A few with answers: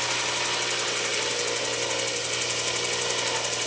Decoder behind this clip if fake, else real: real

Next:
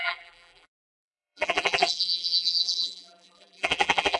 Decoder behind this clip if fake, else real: fake, vocoder, BigVGAN v2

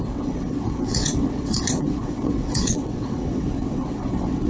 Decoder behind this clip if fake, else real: fake, vocoder, WaveNeXt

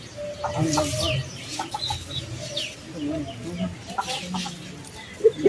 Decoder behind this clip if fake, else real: real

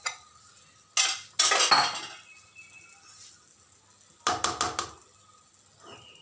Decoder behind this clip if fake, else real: real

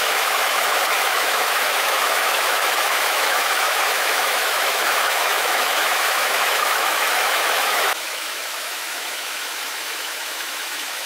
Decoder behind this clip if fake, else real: fake, autoencoder, DAC-VAE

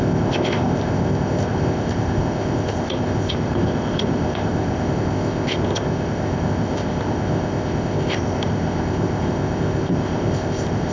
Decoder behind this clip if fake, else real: fake, codec, ZipCodec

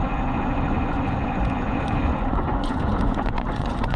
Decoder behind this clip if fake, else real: fake, vocoder, Vocos